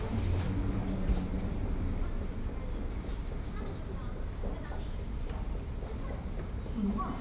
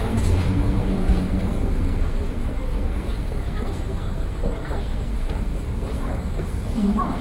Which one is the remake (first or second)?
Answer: second